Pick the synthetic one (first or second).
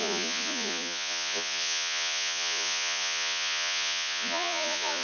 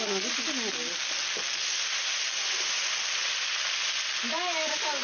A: first